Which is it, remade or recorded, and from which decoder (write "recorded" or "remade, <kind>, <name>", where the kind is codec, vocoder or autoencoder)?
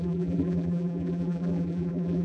remade, vocoder, BigVGAN v2